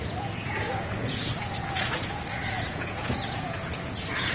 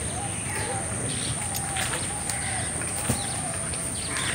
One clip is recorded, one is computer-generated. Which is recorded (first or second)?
second